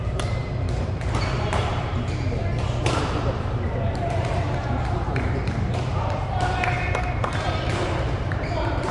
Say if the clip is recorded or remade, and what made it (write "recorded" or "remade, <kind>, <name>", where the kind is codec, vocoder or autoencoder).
remade, vocoder, BigVGAN v2